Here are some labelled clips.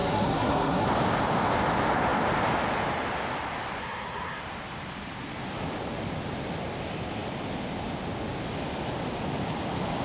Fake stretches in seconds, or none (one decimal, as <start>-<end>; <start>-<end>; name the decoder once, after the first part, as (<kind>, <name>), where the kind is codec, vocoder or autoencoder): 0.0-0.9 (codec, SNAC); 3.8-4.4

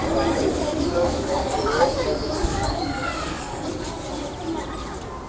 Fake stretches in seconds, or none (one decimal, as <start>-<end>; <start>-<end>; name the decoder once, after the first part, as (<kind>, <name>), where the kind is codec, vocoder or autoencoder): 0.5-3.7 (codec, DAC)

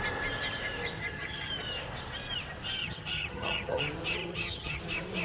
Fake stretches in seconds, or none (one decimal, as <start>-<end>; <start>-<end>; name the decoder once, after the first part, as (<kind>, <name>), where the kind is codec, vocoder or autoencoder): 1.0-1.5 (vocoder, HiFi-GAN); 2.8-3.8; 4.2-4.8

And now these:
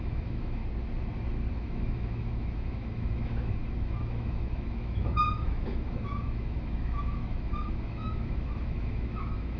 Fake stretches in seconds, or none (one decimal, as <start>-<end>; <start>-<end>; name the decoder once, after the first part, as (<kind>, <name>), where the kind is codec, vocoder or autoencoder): 0.0-0.6 (autoencoder, DAC-VAE); 1.5-9.6